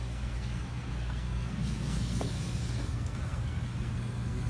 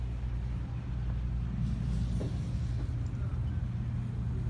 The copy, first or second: first